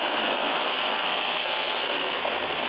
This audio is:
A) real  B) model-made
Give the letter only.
B